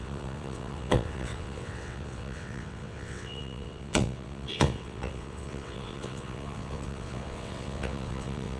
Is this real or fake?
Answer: fake